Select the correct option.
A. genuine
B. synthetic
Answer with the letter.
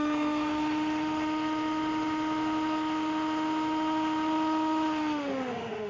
B